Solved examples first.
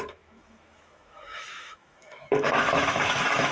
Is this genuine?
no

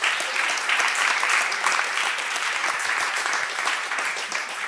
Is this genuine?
no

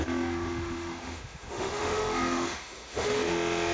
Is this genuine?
no